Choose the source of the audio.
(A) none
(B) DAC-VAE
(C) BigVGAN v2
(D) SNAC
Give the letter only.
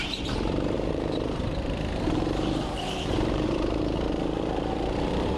C